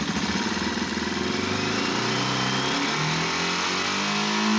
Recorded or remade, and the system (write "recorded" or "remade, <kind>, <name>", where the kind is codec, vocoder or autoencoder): recorded